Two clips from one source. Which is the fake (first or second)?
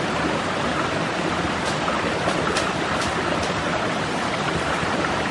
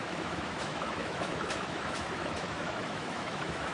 second